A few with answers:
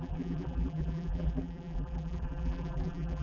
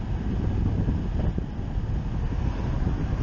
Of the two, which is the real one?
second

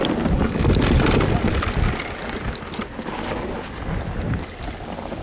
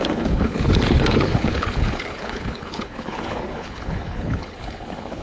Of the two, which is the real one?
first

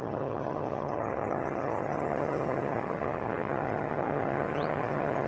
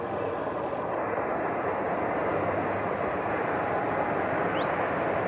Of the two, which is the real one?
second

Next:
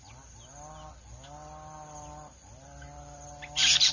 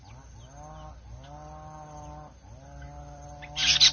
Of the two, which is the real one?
second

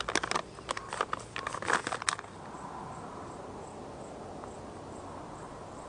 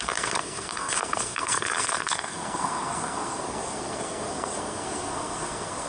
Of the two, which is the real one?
first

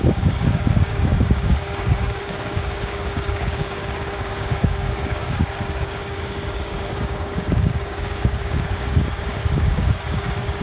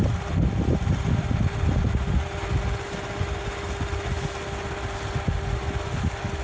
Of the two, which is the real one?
second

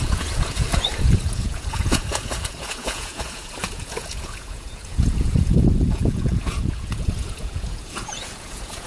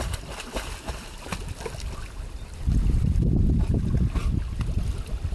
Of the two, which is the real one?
second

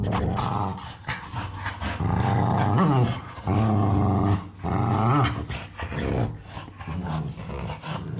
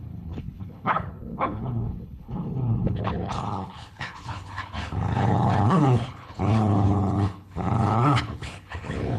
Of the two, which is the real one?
first